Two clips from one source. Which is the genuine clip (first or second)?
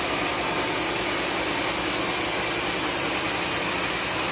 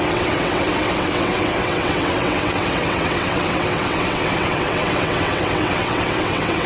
first